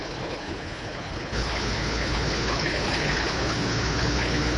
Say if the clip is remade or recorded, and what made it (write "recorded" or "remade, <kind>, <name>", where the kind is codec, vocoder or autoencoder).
remade, codec, HILCodec